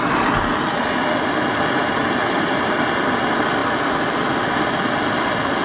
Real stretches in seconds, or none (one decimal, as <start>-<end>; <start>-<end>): 0.0-5.6